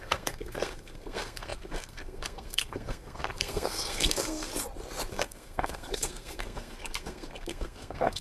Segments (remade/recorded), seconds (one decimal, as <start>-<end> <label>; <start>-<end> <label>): 0.0-4.5 remade; 4.5-5.1 recorded; 5.1-8.2 remade